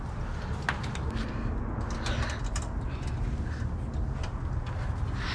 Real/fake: real